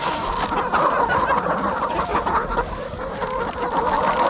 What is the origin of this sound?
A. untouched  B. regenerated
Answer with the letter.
A